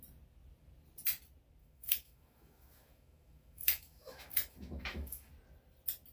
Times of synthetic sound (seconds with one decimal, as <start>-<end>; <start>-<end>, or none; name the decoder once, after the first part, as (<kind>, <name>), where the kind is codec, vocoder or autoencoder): 1.6-5.3 (autoencoder, DAC-VAE)

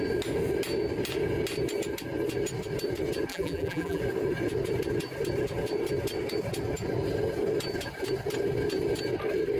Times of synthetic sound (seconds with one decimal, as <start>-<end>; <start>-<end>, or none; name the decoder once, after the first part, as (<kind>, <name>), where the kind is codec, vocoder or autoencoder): 3.3-4.0 (vocoder, BigVGAN v2)

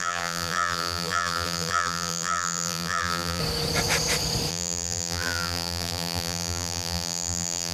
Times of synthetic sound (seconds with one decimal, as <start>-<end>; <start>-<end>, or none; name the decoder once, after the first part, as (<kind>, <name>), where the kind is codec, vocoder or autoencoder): 0.0-3.4 (vocoder, BigVGAN v2); 4.5-7.7

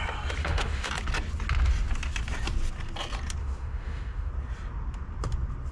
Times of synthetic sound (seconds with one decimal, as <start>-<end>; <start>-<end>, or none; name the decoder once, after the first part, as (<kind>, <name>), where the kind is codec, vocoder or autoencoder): 0.4-0.9 (autoencoder, DAC-VAE); 3.4-4.3

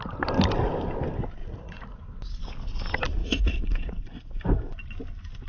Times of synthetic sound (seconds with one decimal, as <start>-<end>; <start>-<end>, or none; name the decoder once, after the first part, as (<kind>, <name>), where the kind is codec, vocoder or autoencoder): 1.4-2.0 (vocoder, Vocos); 3.2-4.4

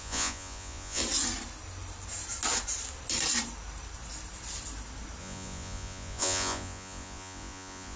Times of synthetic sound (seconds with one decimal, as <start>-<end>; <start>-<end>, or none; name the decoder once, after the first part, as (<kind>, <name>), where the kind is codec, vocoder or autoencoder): 0.0-1.0 (vocoder, Vocos); 5.2-8.0

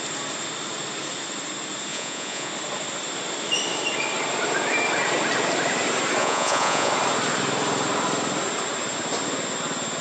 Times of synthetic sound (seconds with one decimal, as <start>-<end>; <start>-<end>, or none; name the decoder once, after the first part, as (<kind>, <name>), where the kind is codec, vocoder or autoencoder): 1.9-2.5 (vocoder, Vocos); 6.2-6.9

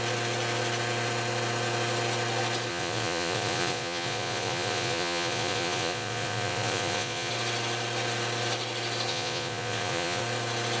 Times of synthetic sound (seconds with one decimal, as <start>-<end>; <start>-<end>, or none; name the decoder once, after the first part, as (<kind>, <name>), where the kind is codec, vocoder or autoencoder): 2.7-7.3 (vocoder, Vocos); 9.1-10.2